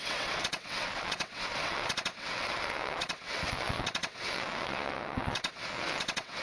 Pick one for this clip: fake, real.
fake